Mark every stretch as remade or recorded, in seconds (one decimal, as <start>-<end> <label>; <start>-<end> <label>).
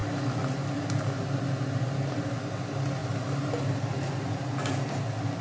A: 0.0-5.4 recorded